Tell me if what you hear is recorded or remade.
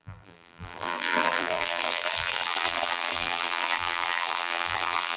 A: remade